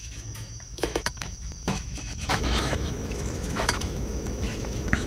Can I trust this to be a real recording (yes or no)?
no